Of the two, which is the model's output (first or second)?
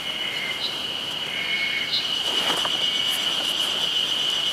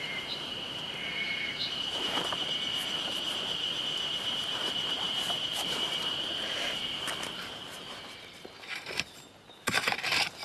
second